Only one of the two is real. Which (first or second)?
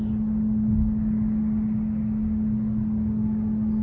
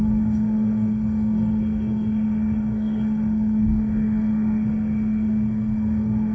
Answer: first